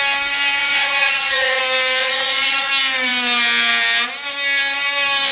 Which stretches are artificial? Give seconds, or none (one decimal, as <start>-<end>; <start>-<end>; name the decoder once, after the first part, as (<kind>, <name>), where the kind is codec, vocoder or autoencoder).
0.6-1.6 (vocoder, Vocos); 2.0-2.7